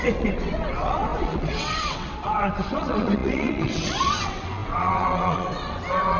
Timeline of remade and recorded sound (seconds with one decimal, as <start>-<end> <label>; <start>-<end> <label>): 0.0-6.2 remade